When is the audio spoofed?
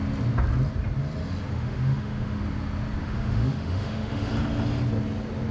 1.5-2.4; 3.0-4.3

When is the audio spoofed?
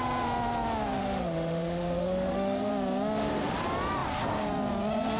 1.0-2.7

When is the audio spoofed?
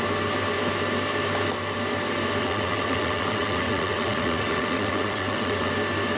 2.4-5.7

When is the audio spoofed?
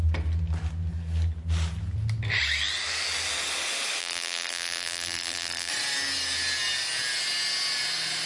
4.0-5.7